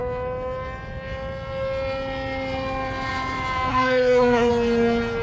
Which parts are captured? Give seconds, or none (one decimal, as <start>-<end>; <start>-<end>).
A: 0.0-3.7; 4.5-5.2